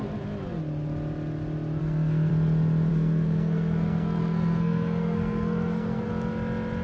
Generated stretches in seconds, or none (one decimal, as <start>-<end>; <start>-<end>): 1.8-2.3; 2.9-6.1